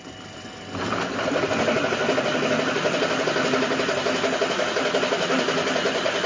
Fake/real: real